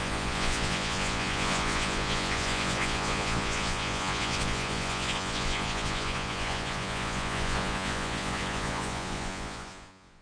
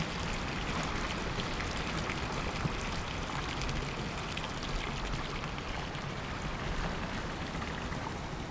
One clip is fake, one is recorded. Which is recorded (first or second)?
second